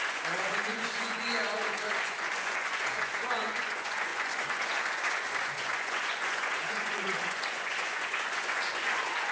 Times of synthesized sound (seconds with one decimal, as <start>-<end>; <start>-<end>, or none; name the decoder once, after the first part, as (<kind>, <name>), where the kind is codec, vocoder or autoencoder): 0.0-9.3 (vocoder, Vocos)